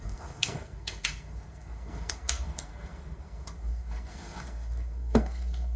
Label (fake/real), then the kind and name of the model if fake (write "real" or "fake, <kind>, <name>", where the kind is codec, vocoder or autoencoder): fake, codec, SNAC